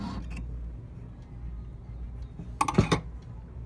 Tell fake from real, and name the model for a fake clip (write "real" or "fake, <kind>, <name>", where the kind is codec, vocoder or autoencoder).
real